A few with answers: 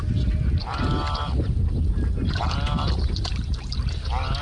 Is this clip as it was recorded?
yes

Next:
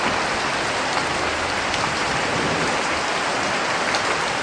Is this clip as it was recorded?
yes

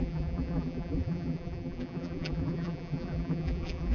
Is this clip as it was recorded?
no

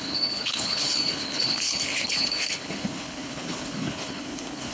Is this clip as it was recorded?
no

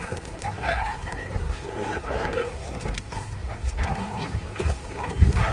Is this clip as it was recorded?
no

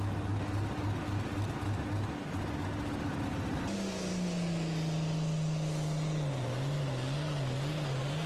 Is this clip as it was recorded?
yes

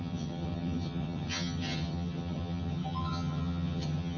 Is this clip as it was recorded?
no